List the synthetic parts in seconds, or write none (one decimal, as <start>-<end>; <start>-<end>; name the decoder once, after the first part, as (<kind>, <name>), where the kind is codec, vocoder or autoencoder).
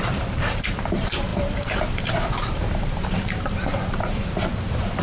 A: 0.0-5.0 (vocoder, BigVGAN v2)